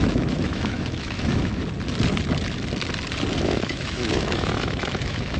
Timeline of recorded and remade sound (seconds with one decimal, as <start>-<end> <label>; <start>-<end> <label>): 0.0-1.6 remade; 1.6-3.4 recorded; 3.4-5.4 remade